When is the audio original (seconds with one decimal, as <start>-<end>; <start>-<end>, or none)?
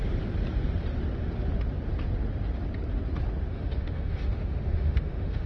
0.0-3.5